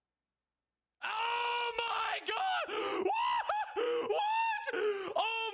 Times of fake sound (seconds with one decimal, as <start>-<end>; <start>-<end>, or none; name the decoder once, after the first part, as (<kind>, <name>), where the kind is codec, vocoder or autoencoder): none